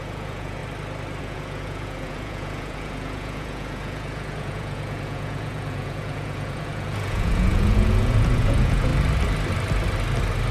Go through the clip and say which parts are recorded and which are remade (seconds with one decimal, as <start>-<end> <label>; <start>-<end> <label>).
0.0-0.6 remade; 0.6-1.2 recorded; 1.2-8.9 remade; 8.9-10.5 recorded